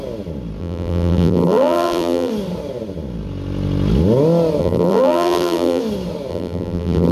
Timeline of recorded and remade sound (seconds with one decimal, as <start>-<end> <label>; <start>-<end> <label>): 0.0-0.6 recorded; 0.6-2.3 remade; 2.3-4.6 recorded; 4.6-5.8 remade; 5.8-6.3 recorded; 6.3-7.1 remade